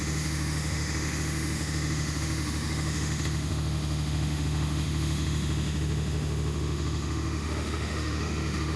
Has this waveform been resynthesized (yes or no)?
yes